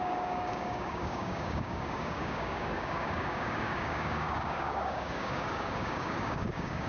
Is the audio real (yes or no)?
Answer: no